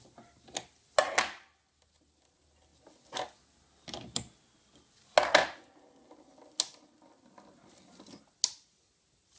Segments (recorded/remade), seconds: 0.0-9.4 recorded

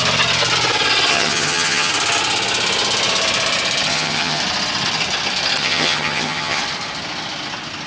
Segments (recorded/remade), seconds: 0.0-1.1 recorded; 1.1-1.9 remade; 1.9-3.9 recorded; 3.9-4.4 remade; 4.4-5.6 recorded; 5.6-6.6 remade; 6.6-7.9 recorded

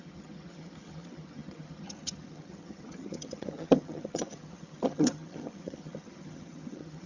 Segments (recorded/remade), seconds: 0.0-7.1 remade

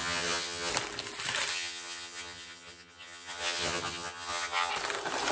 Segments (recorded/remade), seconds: 0.0-0.7 remade; 0.7-1.5 recorded; 1.5-4.7 remade; 4.7-5.3 recorded

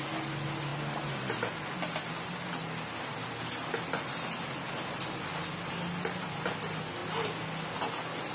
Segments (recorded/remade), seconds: 0.0-8.3 recorded

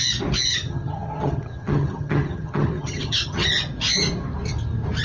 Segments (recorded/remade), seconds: 0.0-0.5 recorded; 0.5-3.5 remade; 3.5-5.0 recorded

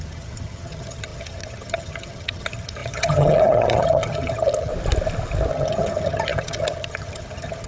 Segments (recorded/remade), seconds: 0.0-4.7 remade; 4.7-5.5 recorded; 5.5-7.7 remade